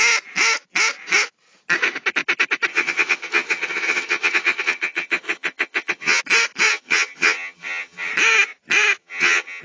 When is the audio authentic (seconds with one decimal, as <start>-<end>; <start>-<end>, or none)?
0.0-2.7; 6.2-6.7; 8.1-9.0